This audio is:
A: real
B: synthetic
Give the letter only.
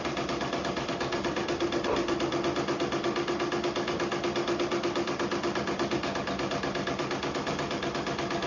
A